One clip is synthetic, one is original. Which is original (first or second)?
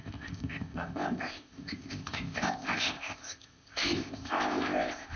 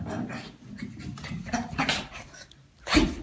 second